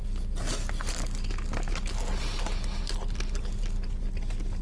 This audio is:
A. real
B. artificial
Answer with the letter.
A